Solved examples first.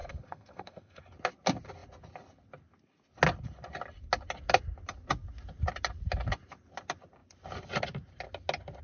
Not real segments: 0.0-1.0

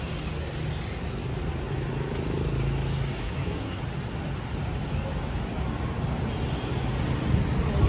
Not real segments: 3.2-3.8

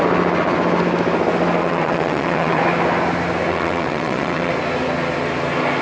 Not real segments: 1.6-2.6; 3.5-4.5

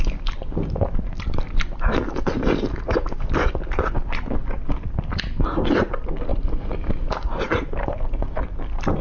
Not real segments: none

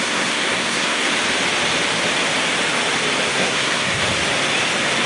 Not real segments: 0.0-1.1; 3.3-4.0

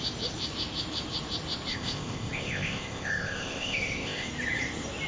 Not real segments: 1.7-4.3

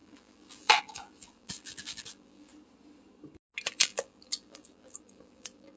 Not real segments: 0.0-2.5; 3.7-5.8

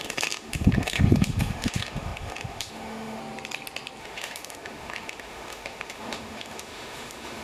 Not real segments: 0.0-3.2; 4.0-7.4